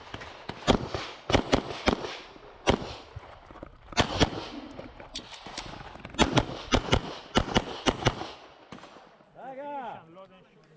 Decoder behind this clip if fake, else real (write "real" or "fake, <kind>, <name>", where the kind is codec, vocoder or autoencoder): real